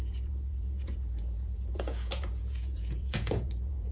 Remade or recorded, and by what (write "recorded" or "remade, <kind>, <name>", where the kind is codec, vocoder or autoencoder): remade, vocoder, Vocos